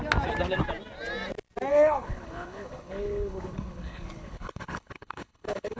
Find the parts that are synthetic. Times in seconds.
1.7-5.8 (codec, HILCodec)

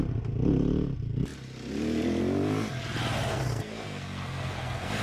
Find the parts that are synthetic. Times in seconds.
3.3-5.0 (codec, SNAC)

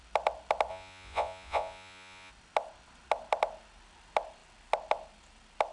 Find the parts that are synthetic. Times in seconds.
0.7-2.3 (vocoder, Vocos)